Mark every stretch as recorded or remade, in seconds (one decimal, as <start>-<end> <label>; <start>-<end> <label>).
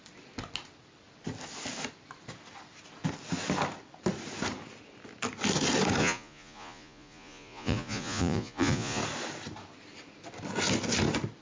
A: 0.0-6.0 recorded; 6.0-9.0 remade; 9.0-11.4 recorded